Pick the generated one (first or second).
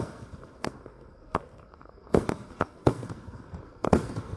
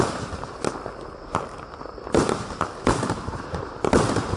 first